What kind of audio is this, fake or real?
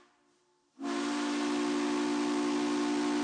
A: real